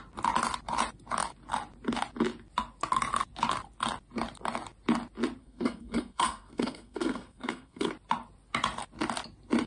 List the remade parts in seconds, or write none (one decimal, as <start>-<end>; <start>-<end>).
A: 5.4-7.9